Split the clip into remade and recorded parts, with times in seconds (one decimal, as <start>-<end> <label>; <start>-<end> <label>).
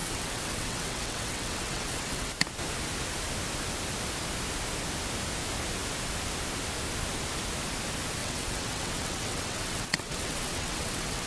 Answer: 0.0-2.3 remade; 2.3-8.2 recorded; 8.2-11.3 remade